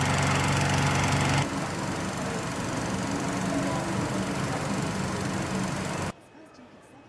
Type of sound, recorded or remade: recorded